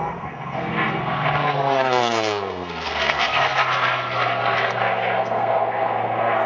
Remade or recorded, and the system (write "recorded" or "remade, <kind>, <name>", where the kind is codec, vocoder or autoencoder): remade, codec, SNAC